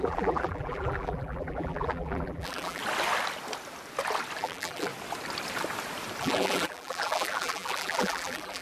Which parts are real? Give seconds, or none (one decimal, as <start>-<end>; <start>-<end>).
2.8-4.4; 4.9-6.2